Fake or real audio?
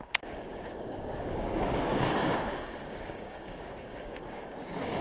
fake